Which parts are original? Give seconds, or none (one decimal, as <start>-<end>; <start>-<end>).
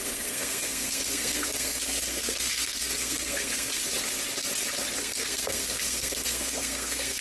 3.8-5.0